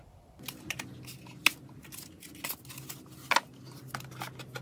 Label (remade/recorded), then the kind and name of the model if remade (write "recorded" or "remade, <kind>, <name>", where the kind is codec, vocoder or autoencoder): recorded